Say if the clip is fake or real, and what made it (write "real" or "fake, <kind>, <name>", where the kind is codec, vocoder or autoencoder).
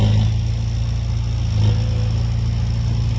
real